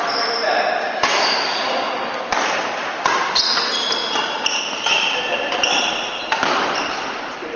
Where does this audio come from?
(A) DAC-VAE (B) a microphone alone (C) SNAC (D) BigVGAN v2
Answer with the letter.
B